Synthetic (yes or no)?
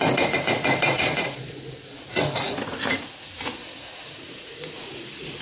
yes